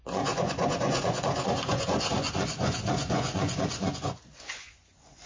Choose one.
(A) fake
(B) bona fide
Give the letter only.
A